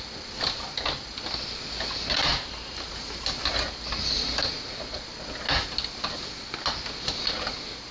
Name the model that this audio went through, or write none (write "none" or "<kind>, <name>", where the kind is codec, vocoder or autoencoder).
none